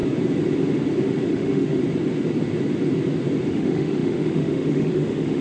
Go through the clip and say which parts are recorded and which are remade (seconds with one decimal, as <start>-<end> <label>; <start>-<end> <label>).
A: 0.0-1.3 recorded; 1.3-1.8 remade; 1.8-3.5 recorded; 3.5-5.4 remade